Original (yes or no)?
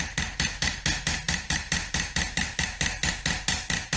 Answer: yes